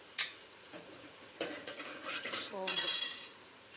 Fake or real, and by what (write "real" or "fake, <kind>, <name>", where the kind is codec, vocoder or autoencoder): fake, vocoder, Vocos